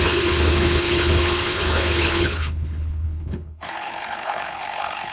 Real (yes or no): no